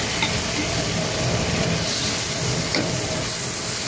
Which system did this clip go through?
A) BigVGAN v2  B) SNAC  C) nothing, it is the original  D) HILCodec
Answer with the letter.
C